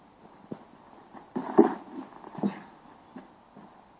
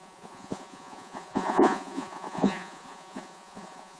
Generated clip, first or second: second